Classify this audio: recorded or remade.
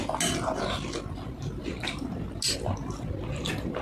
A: recorded